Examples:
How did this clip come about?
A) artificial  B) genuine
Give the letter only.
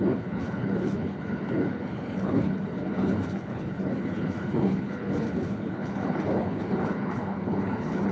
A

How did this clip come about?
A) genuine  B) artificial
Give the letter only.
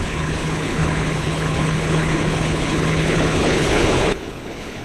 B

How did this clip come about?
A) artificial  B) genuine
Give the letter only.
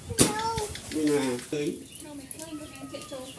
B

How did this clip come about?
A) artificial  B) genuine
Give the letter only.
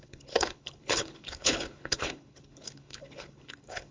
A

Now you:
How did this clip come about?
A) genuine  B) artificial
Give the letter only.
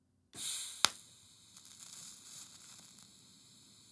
A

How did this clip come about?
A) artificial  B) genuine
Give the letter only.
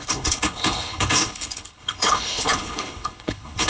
A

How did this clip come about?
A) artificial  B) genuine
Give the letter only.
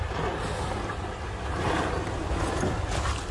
B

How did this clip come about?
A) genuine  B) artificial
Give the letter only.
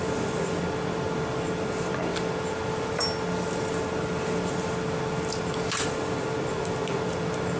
A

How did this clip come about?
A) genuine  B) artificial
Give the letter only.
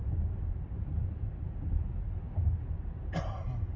A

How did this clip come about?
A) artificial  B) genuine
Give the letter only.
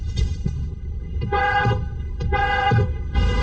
A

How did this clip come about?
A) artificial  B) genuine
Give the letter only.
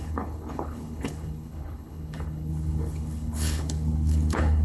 A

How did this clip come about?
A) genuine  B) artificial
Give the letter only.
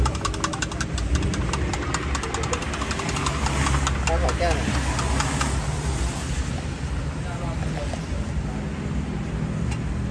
A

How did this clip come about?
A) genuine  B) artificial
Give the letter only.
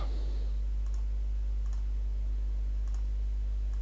A